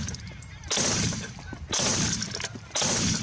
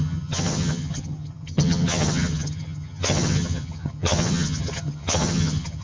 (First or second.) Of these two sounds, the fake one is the second